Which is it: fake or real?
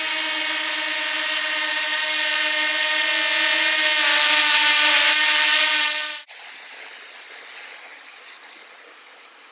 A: real